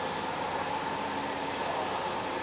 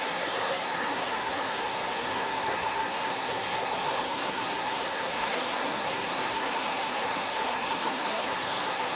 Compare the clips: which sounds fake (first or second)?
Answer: second